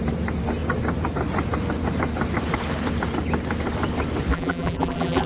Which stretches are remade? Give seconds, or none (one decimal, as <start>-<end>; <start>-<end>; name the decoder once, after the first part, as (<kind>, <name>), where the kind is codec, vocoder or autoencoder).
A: 4.3-5.3 (vocoder, BigVGAN v2)